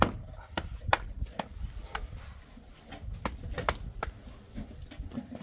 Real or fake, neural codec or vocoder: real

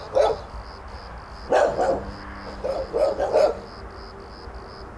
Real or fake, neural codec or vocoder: real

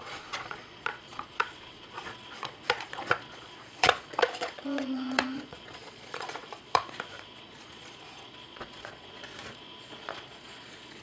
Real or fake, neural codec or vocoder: fake, vocoder, Vocos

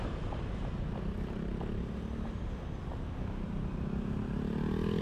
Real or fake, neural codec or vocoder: real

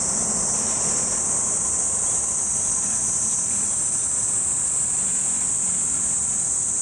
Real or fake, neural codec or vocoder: real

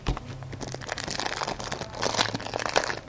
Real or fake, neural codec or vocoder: real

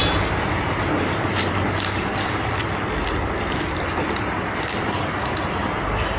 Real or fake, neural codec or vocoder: real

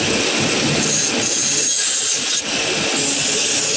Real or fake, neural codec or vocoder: real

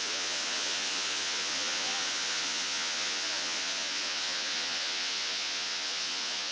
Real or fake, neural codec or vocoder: fake, vocoder, Vocos